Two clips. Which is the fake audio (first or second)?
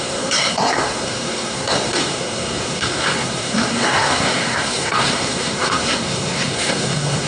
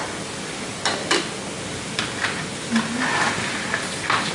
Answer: first